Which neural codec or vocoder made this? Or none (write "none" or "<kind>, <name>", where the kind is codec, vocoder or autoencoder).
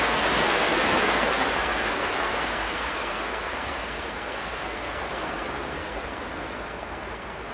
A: codec, SNAC